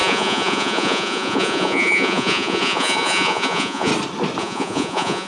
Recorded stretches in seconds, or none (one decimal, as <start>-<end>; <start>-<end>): 3.9-4.4